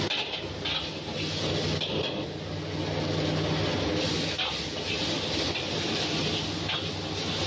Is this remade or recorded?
recorded